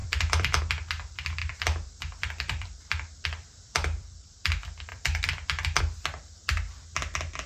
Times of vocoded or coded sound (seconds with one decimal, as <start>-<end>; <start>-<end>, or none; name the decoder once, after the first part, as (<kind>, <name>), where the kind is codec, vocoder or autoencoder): 0.0-0.6 (vocoder, BigVGAN v2); 1.4-4.5; 4.9-5.8